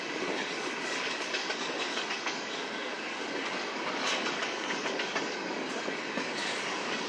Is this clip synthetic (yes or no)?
yes